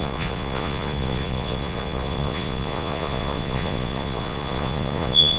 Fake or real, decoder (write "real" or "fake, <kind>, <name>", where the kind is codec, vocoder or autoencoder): fake, vocoder, Vocos